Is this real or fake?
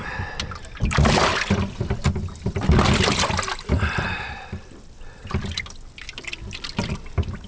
real